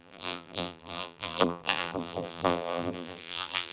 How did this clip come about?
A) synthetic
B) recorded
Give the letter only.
A